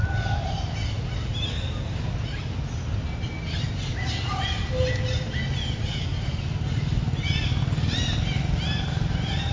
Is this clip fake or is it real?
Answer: real